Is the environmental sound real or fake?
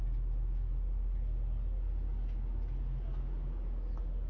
real